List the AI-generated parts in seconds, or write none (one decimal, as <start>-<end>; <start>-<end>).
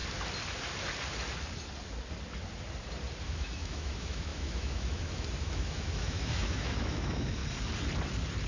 3.2-7.4